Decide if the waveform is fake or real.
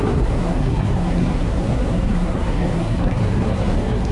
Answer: fake